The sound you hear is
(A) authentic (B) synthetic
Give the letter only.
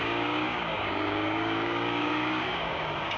B